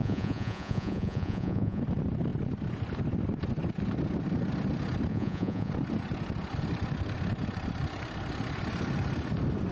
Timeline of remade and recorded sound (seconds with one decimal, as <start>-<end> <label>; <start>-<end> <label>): 0.0-1.8 remade; 1.8-5.1 recorded; 5.1-5.7 remade; 5.7-9.7 recorded